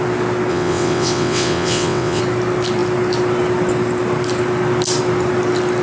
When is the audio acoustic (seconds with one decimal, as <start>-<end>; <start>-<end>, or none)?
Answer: 0.0-0.5; 2.2-5.8